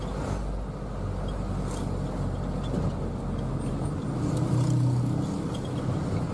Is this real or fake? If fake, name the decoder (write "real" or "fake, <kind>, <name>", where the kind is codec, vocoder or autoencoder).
real